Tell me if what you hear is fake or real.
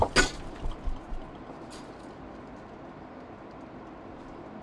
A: real